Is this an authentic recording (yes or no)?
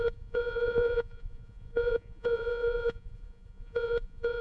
no